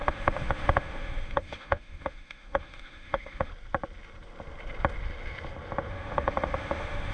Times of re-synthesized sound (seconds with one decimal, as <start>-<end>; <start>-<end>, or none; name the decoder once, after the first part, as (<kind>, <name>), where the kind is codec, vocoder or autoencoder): 0.0-3.5 (autoencoder, DAC-VAE); 5.9-7.1